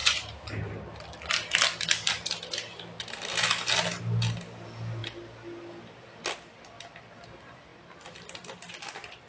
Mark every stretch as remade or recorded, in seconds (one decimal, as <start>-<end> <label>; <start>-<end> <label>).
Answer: 0.0-9.3 recorded